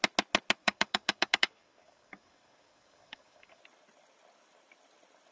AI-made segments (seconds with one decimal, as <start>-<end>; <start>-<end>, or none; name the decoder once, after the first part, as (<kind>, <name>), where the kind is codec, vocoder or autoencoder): 0.6-3.6 (codec, DAC)